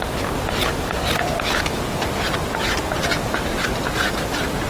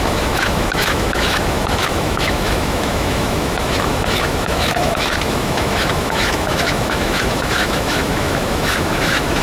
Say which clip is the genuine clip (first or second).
first